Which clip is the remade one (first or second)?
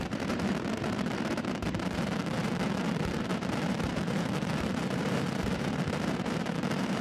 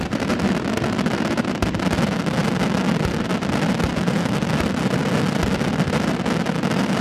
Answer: first